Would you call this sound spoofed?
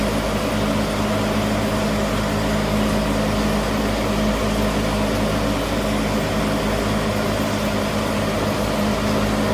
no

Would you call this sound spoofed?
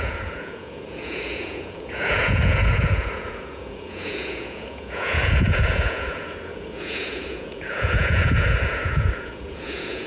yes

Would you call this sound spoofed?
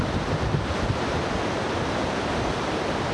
no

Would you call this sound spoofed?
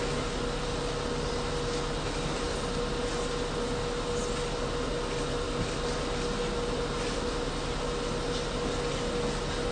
no